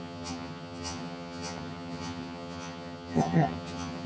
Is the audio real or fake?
fake